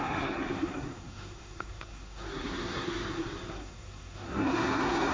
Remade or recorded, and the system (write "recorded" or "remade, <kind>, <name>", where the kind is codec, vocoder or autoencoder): remade, codec, SNAC